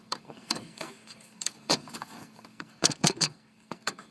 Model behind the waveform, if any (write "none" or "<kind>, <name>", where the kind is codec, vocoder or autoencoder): codec, SNAC